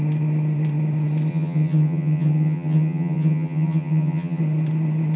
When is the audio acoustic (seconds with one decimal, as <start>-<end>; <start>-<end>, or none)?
0.0-1.3; 4.4-5.2